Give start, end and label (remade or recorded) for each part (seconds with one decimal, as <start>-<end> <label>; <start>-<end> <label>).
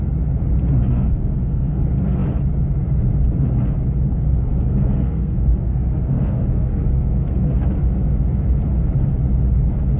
0.0-0.9 recorded; 0.9-1.8 remade; 1.8-4.1 recorded; 4.1-7.6 remade; 7.6-10.0 recorded